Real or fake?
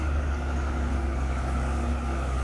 fake